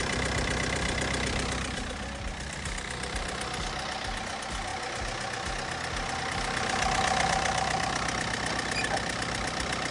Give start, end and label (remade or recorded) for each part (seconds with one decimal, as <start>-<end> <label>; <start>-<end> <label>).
0.0-4.7 remade; 4.7-6.2 recorded; 6.2-9.9 remade

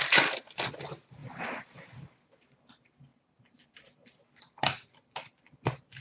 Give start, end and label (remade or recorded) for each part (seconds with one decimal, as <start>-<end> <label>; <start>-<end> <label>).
0.0-1.2 recorded; 1.2-2.6 remade; 2.6-3.1 recorded; 3.1-6.0 remade

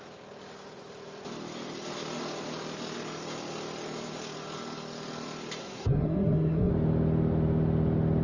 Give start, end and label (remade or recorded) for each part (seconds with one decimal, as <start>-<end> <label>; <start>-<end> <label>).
0.0-5.6 recorded; 5.6-6.7 remade; 6.7-8.2 recorded

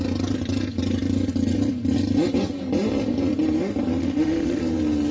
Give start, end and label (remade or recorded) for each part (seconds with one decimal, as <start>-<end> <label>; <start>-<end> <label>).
0.0-4.0 recorded; 4.0-4.6 remade; 4.6-5.1 recorded

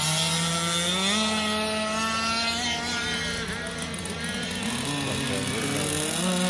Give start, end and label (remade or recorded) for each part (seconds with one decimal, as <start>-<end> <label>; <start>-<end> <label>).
0.0-6.5 recorded

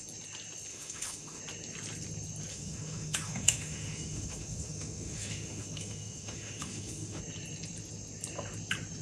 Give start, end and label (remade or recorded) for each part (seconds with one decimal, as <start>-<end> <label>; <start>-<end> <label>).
0.0-0.7 recorded; 0.7-1.4 remade; 1.4-2.5 recorded; 2.5-7.2 remade; 7.2-9.0 recorded

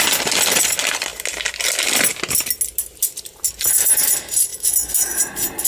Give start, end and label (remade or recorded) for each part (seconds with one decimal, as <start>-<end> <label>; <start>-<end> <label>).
0.0-4.5 recorded; 4.5-5.2 remade; 5.2-5.7 recorded